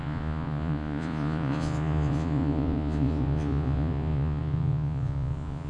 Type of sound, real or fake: fake